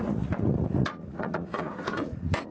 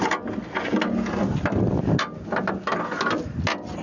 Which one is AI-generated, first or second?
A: first